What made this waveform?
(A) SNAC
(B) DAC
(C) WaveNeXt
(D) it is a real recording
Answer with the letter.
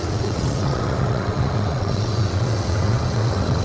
C